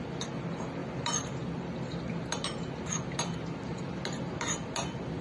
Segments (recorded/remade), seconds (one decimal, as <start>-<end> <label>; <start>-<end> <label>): 0.0-5.2 recorded